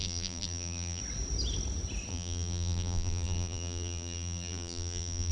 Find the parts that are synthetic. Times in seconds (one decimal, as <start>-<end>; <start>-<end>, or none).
0.0-1.0; 2.1-5.3